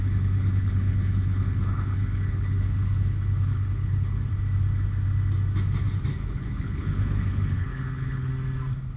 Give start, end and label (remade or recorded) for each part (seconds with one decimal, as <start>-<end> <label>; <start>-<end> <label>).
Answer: 0.0-4.3 remade; 4.3-6.1 recorded; 6.1-8.3 remade; 8.3-9.0 recorded